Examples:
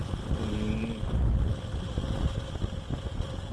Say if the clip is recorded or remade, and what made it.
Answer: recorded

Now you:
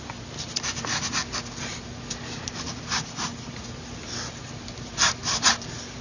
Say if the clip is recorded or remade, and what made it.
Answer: recorded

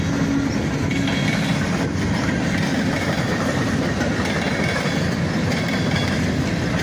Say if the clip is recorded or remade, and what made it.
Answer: recorded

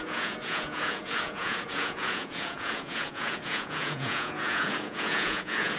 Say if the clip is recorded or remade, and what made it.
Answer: remade, vocoder, Vocos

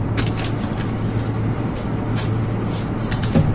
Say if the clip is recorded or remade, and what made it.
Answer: recorded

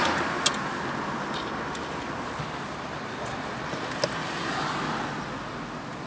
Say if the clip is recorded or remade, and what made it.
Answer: recorded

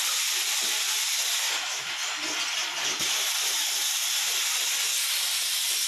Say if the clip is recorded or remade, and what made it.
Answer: recorded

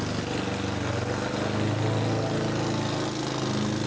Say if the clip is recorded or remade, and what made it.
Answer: recorded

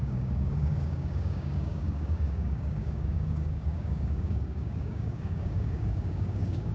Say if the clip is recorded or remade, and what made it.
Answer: remade, codec, DAC